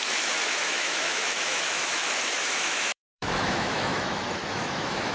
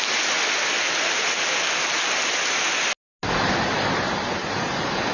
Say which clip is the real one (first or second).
second